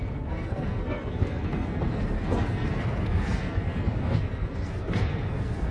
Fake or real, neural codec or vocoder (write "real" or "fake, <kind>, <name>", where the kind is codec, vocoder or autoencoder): fake, codec, SNAC